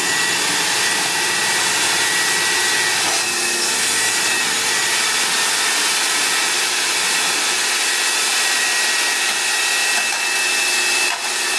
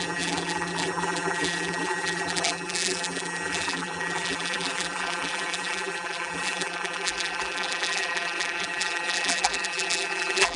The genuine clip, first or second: first